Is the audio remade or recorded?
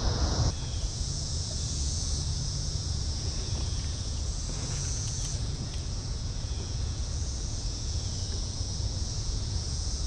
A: remade